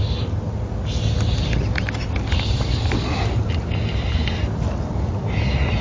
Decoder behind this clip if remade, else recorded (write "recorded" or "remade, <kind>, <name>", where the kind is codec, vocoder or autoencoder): recorded